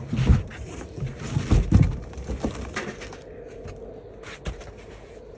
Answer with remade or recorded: recorded